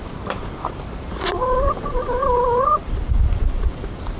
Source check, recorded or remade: remade